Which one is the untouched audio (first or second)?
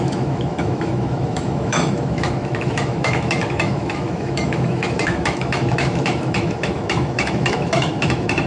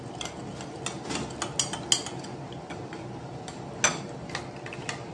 second